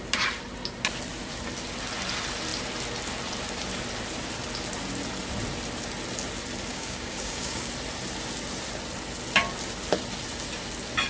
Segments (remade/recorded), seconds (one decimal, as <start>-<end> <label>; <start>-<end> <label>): 0.0-6.7 recorded; 6.7-7.7 remade; 7.7-11.1 recorded